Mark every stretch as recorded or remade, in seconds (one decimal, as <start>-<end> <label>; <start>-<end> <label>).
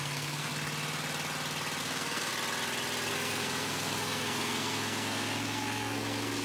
0.0-0.5 remade; 0.5-1.8 recorded; 1.8-2.3 remade; 2.3-3.1 recorded; 3.1-6.4 remade